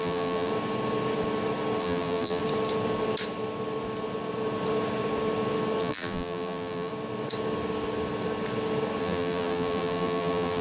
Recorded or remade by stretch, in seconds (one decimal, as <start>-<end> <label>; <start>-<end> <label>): 0.0-0.5 remade; 0.5-1.8 recorded; 1.8-2.4 remade; 2.4-5.8 recorded; 5.8-6.9 remade; 6.9-9.0 recorded; 9.0-10.6 remade

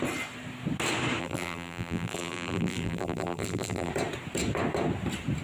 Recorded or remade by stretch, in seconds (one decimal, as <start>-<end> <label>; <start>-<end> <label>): 0.0-1.2 recorded; 1.2-3.9 remade; 3.9-5.4 recorded

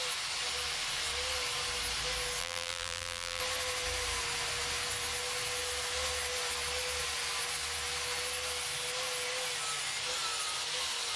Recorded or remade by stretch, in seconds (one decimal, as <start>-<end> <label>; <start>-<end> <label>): 0.0-2.4 recorded; 2.4-3.4 remade; 3.4-11.2 recorded

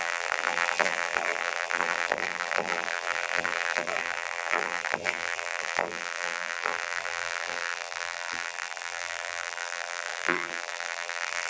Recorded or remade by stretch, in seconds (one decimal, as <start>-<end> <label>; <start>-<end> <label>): 0.0-11.5 remade

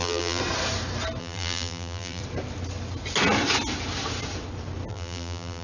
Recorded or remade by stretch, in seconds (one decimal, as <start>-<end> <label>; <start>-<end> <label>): 0.0-0.4 remade; 0.4-1.2 recorded; 1.2-2.2 remade; 2.2-4.9 recorded; 4.9-5.6 remade

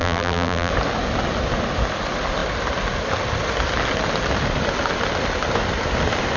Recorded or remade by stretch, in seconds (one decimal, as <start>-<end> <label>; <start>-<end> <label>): 0.0-0.7 remade; 0.7-6.4 recorded

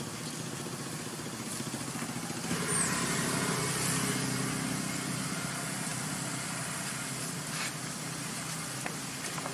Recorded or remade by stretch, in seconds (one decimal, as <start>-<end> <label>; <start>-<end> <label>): 0.0-9.5 recorded

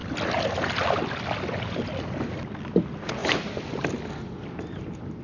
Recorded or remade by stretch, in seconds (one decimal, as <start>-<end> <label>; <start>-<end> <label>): 0.0-0.9 remade; 0.9-3.2 recorded; 3.2-5.2 remade